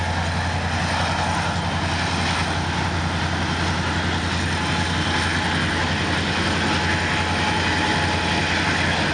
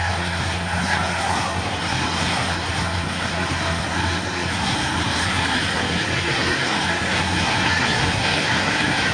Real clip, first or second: first